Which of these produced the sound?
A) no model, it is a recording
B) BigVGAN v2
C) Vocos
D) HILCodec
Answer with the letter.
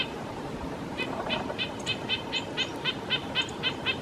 B